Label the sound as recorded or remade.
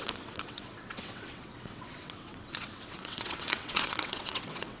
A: remade